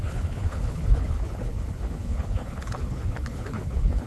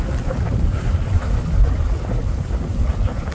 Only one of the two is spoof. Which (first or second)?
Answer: first